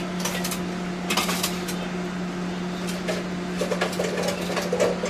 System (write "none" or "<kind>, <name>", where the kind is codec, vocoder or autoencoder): none